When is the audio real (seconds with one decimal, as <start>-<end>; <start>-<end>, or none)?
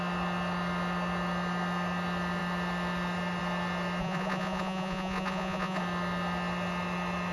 0.0-4.0; 5.8-7.3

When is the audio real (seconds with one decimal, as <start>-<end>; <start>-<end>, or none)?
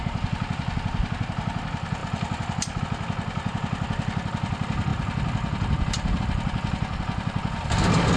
0.0-8.2